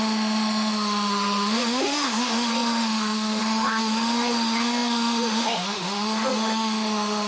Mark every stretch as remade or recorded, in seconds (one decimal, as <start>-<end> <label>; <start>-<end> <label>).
0.0-7.3 remade